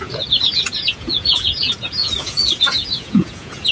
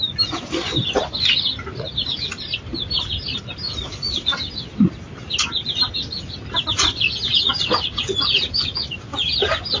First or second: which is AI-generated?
first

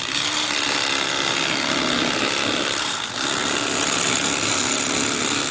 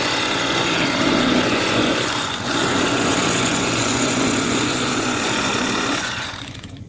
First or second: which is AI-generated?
second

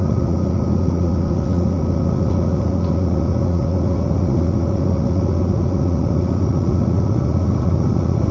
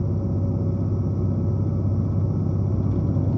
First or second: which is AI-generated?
first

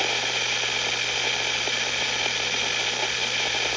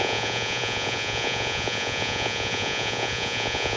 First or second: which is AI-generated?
second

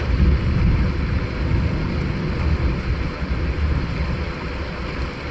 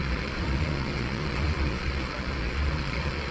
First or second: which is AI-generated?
second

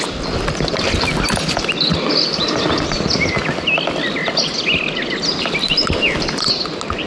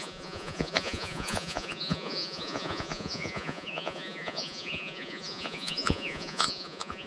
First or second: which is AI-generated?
second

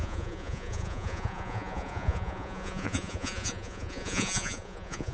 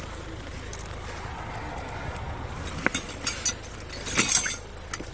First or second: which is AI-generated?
first